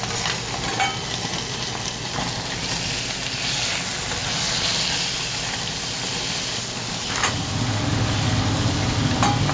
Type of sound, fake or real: real